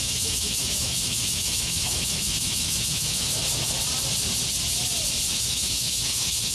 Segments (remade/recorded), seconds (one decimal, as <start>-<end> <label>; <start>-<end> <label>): 0.0-3.4 remade; 3.4-5.3 recorded; 5.3-6.5 remade